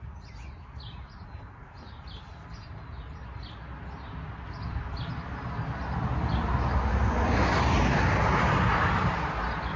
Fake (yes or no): no